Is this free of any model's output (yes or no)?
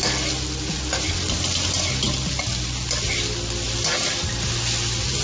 yes